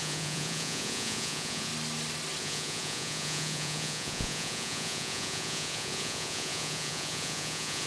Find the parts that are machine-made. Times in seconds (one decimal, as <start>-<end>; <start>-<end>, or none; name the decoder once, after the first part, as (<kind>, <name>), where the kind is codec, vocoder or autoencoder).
0.0-1.7 (vocoder, Vocos); 2.4-7.9